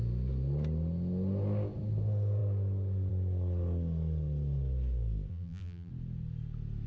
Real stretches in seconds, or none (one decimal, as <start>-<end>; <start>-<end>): 0.0-5.3; 5.9-6.9